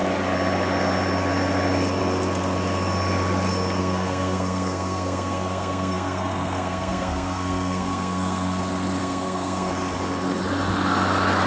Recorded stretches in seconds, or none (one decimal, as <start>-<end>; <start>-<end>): 0.0-3.8; 8.6-9.0; 9.7-11.5